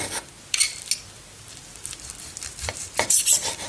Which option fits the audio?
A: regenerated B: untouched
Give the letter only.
B